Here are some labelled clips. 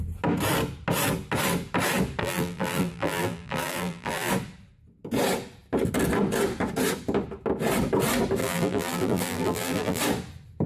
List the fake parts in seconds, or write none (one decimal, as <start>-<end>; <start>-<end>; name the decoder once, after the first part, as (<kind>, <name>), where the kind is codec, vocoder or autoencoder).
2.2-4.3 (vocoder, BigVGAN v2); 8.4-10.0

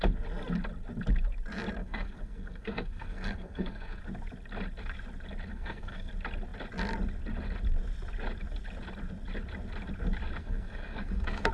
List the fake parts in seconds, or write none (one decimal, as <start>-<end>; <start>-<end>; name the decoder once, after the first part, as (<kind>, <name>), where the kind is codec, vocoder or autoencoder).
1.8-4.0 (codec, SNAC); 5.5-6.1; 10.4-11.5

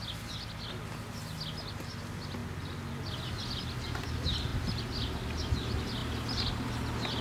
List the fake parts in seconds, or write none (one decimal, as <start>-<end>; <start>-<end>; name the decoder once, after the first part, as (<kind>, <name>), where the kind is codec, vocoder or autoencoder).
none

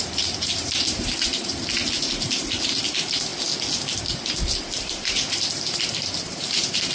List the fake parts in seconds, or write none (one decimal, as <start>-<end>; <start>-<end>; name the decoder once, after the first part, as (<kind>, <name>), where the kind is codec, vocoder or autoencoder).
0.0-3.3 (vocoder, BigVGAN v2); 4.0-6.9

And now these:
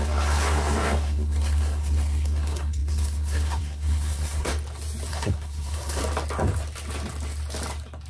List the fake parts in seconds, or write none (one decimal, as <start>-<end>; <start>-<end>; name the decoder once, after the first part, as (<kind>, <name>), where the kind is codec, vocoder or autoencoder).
0.0-4.5 (codec, SNAC); 5.1-6.0

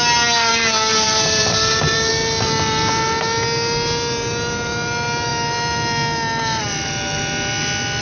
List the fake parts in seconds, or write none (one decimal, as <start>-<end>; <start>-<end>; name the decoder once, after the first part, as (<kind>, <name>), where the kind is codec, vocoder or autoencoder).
0.5-2.1 (vocoder, BigVGAN v2)

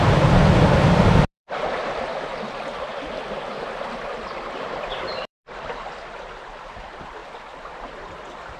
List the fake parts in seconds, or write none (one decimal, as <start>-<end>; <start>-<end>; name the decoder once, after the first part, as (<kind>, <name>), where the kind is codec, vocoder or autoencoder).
0.0-7.2 (vocoder, BigVGAN v2)

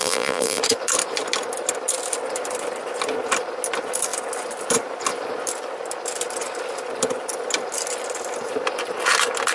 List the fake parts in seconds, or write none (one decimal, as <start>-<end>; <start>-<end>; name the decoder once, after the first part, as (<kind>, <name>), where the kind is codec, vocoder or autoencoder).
0.0-0.6 (vocoder, BigVGAN v2)